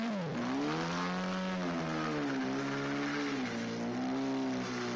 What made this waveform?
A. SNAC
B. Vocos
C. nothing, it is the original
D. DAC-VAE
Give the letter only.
C